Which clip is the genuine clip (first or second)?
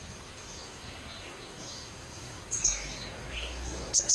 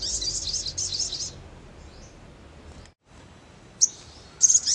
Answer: second